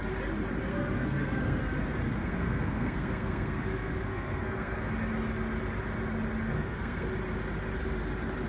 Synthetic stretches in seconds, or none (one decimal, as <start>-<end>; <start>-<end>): 0.7-1.6; 2.1-4.9; 6.5-7.1